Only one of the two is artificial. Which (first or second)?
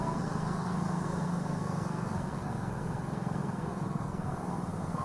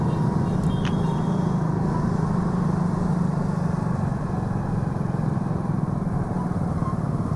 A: first